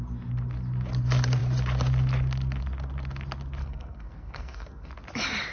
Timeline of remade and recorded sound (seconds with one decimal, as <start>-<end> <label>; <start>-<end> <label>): 0.0-3.6 recorded; 3.6-4.9 remade; 4.9-5.5 recorded